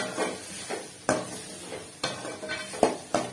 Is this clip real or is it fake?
real